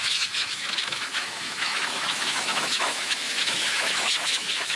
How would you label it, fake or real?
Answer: fake